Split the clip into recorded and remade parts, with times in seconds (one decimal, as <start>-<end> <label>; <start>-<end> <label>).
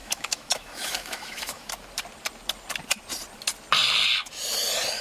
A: 0.0-1.7 remade; 1.7-5.0 recorded